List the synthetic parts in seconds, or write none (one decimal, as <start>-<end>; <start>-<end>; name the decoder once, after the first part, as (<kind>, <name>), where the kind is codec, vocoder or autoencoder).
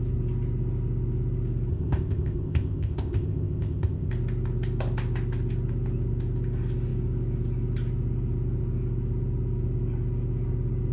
1.7-4.1 (codec, ZipCodec)